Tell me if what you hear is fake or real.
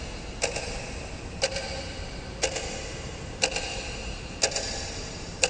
real